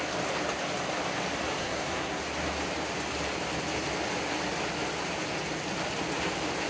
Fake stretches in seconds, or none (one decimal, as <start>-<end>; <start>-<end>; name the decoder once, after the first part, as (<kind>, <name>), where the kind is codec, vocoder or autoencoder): 1.6-2.2 (codec, SNAC)

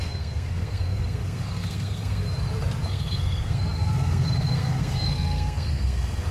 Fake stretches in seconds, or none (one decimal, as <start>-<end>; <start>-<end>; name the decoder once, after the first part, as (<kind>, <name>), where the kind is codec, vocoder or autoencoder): 0.0-2.2 (codec, SNAC); 2.9-6.3

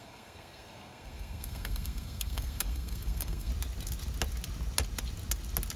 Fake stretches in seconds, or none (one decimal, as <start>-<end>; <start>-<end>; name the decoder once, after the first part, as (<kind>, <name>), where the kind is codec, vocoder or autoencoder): 0.0-3.5 (codec, SNAC)